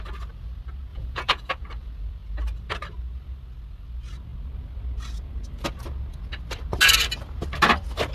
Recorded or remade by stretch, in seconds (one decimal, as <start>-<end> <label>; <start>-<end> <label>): 0.0-0.9 recorded; 0.9-1.5 remade; 1.5-8.1 recorded